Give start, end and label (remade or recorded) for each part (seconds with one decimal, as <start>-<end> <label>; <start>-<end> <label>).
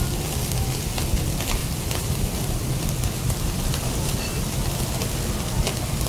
0.0-1.6 recorded; 1.6-5.3 remade; 5.3-6.1 recorded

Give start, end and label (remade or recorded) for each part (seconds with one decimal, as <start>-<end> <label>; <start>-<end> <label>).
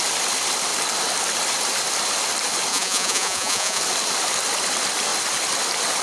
0.0-2.7 recorded; 2.7-3.8 remade; 3.8-6.0 recorded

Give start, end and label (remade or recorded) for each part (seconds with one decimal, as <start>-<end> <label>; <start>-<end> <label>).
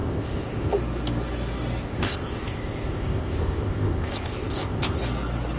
0.0-0.7 remade; 0.7-1.8 recorded; 1.8-5.0 remade; 5.0-5.6 recorded